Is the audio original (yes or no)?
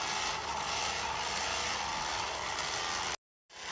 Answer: yes